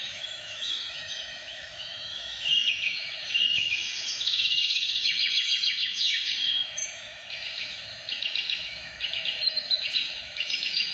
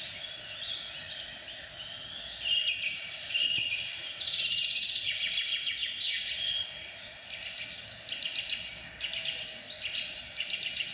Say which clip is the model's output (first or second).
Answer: first